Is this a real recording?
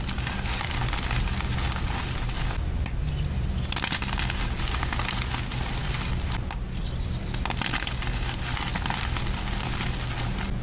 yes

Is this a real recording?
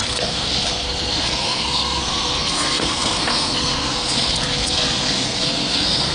no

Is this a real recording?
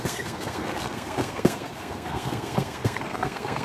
no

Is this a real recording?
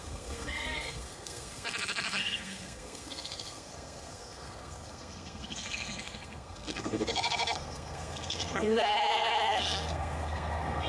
no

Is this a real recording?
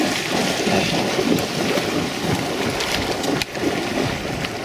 yes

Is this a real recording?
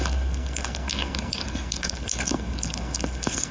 no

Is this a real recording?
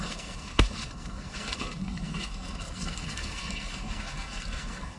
no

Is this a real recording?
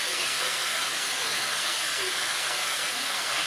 no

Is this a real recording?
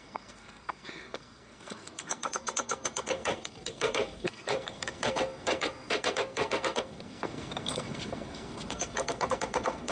no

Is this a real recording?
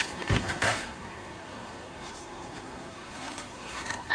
no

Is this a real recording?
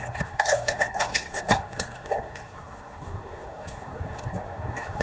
no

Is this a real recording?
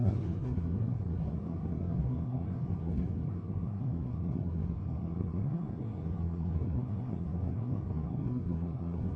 no